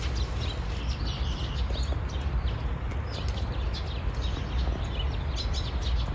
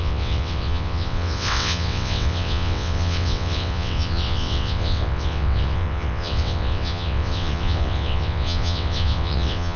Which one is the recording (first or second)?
first